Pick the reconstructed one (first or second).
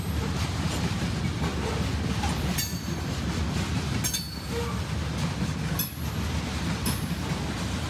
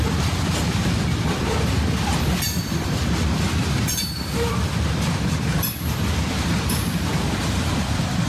second